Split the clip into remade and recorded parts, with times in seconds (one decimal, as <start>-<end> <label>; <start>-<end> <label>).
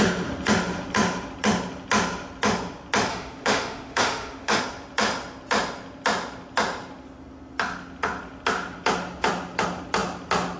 0.0-3.1 recorded; 3.1-4.6 remade; 4.6-10.6 recorded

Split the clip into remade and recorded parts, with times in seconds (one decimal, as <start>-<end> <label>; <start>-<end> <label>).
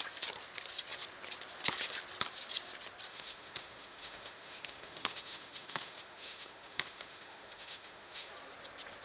0.0-3.1 recorded; 3.1-8.3 remade; 8.3-9.0 recorded